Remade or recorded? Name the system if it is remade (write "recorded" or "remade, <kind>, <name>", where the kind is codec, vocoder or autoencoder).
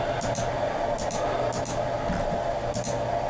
recorded